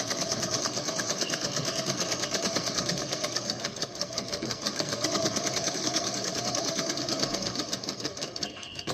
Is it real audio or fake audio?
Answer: fake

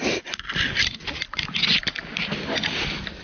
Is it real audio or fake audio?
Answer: real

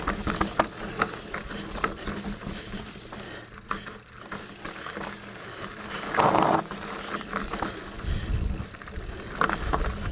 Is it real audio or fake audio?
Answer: real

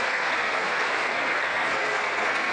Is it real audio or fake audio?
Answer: fake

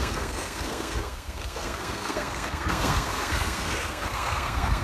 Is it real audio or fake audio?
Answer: fake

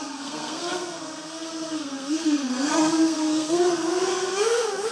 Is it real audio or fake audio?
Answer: fake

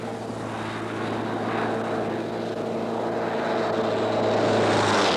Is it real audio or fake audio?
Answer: real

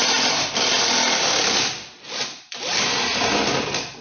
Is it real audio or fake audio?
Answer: real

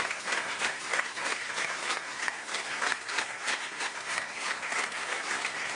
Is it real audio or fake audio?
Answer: fake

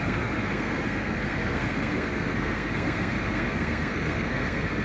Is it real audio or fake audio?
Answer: fake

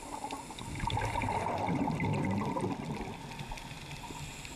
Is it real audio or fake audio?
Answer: real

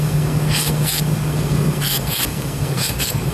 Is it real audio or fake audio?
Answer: fake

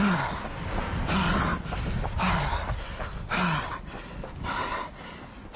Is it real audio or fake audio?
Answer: real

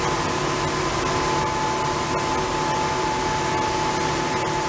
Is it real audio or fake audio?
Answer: real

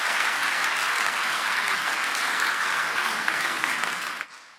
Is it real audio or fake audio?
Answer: fake